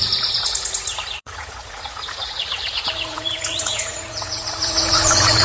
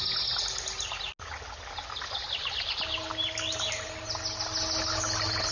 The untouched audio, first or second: second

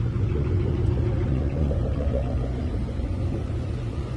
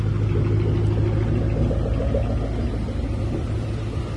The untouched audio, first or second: second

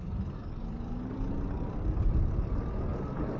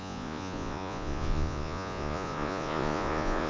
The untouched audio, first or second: first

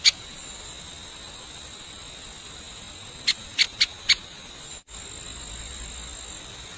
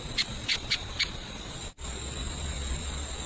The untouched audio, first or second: first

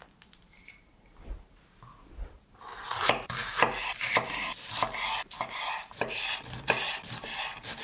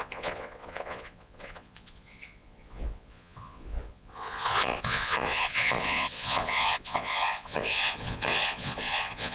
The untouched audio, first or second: first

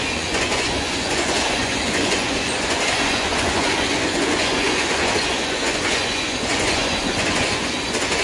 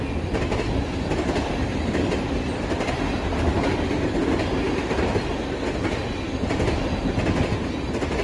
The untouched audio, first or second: second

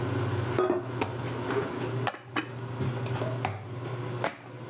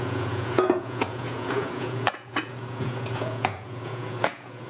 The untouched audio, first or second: first